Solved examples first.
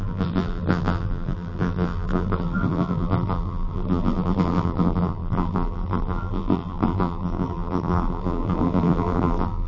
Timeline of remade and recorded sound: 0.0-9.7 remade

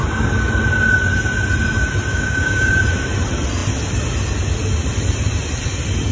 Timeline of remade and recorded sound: 0.0-2.1 recorded; 2.1-2.7 remade; 2.7-6.1 recorded

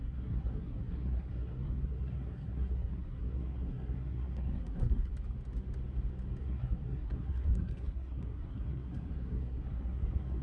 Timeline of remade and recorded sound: 0.0-5.1 remade; 5.1-6.4 recorded; 6.4-10.4 remade

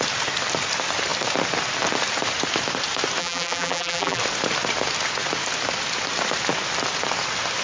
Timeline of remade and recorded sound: 0.0-3.2 recorded; 3.2-4.2 remade; 4.2-7.6 recorded

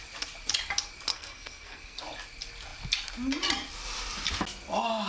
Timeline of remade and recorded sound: 0.0-1.1 recorded; 1.1-2.0 remade; 2.0-5.1 recorded